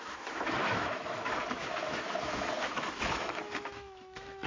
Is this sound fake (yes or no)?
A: yes